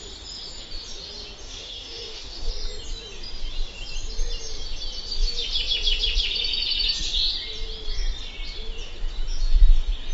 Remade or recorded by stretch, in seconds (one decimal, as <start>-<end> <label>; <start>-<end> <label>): 0.0-1.4 recorded; 1.4-2.5 remade; 2.5-10.1 recorded